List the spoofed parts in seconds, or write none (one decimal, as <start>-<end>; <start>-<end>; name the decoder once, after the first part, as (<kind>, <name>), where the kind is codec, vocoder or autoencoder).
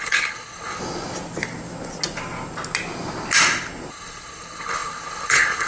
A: 0.0-0.8 (codec, HILCodec); 3.9-5.7